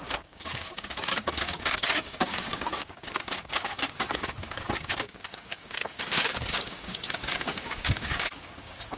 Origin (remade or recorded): remade